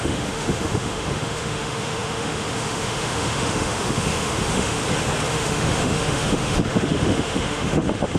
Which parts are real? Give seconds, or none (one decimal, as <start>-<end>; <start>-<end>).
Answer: 4.8-5.3